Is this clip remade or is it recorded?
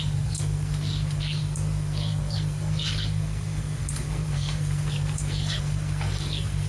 remade